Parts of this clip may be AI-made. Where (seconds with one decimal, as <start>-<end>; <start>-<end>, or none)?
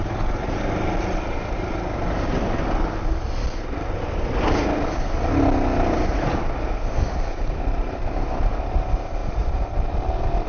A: 9.2-9.9